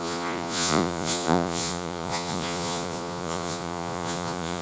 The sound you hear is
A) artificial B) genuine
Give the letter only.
A